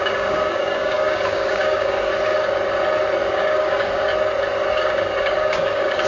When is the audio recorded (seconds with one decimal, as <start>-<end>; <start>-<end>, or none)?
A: 2.1-3.3; 4.1-4.7